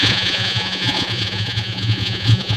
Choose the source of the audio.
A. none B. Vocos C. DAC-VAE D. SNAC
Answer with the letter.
B